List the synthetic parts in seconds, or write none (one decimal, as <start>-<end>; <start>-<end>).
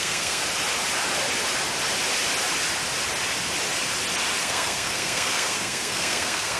0.0-0.4; 4.4-6.6